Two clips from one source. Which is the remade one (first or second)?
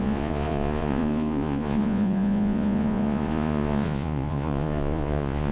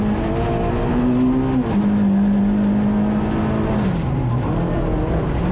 first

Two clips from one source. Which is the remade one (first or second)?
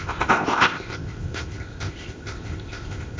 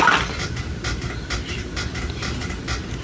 first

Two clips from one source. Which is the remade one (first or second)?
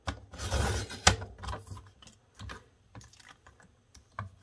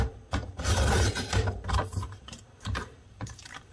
second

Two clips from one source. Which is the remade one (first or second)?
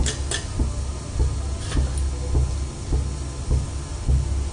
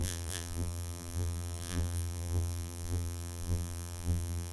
second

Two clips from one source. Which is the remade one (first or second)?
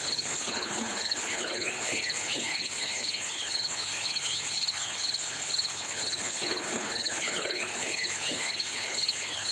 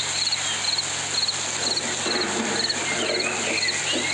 first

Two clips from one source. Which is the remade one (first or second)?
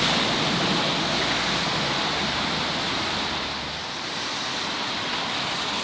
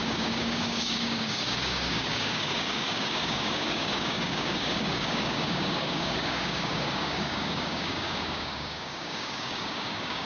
second